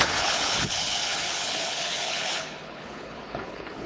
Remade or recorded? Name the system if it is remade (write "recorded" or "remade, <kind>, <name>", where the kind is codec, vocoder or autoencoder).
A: remade, codec, HILCodec